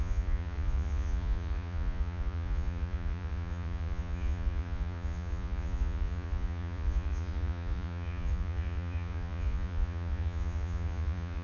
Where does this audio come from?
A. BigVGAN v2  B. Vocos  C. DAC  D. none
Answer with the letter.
B